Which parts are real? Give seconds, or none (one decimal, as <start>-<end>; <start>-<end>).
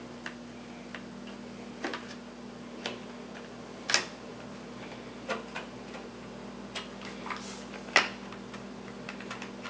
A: 0.0-9.7